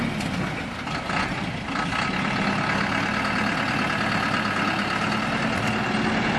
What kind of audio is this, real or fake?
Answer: real